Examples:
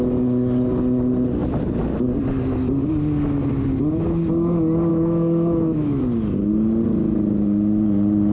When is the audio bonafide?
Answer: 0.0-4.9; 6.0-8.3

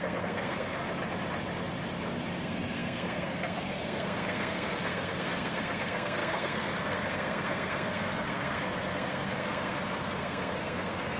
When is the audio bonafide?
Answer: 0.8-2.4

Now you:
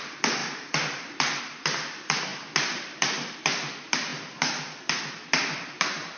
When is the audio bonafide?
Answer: 0.0-6.2

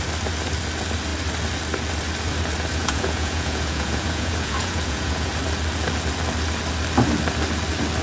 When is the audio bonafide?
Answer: 0.0-2.8; 5.3-8.0

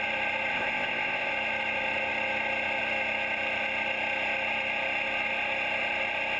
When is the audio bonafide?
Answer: 0.0-0.5; 1.3-6.4

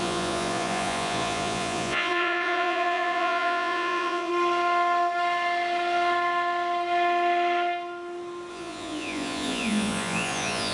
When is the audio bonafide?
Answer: 4.3-8.5

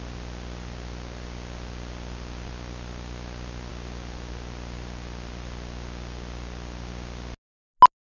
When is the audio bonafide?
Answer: 0.0-8.0